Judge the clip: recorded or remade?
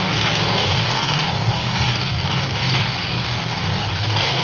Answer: remade